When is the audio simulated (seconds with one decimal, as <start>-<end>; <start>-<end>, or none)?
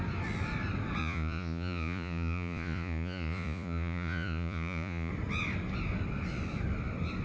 1.0-5.1